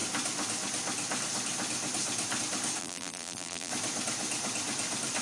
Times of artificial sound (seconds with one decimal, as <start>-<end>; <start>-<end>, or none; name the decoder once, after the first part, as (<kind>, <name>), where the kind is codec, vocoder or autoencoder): 2.8-3.7 (vocoder, BigVGAN v2)